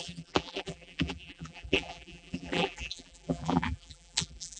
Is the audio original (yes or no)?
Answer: no